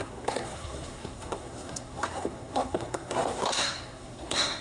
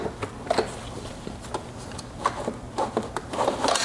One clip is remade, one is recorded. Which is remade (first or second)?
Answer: first